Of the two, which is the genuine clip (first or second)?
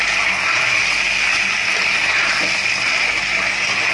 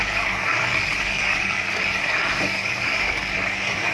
first